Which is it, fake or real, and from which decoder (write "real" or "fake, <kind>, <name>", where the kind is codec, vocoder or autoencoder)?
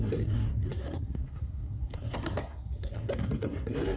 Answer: fake, codec, SNAC